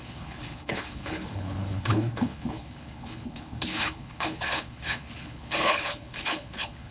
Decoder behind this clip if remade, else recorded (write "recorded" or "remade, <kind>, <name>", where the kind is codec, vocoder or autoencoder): remade, codec, HILCodec